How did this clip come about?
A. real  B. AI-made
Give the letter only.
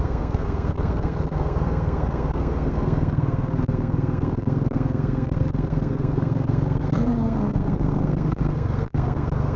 B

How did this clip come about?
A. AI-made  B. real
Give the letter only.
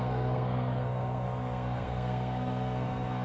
A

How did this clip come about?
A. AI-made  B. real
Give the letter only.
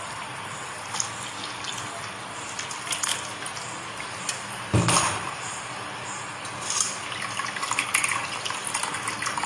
B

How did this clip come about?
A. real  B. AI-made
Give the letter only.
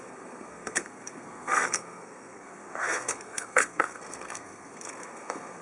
B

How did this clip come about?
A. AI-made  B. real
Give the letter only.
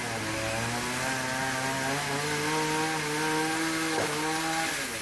B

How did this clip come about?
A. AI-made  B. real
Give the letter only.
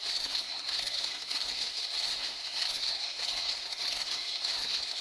A